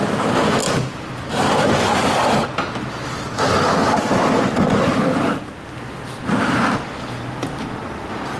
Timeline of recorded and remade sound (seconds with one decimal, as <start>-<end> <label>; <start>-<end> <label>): 0.0-8.4 recorded